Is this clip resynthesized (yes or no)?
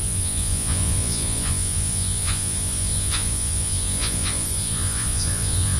yes